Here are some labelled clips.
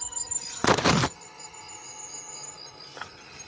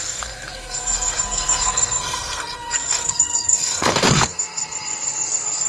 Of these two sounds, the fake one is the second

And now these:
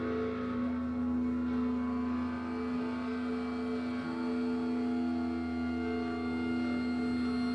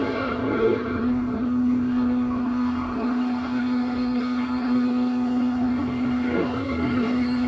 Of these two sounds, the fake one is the second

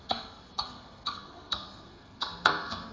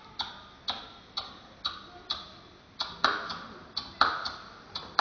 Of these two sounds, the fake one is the first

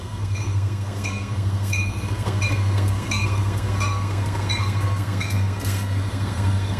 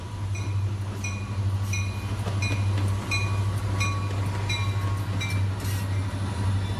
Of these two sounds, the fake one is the first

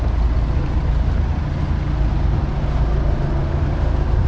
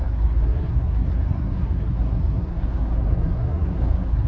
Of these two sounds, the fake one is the second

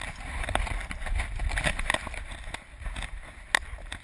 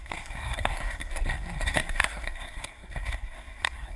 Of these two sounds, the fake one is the second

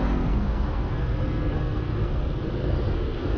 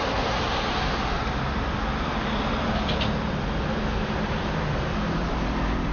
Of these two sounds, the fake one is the first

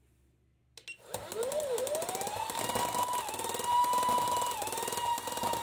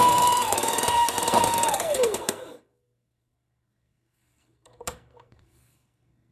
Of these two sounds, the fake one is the second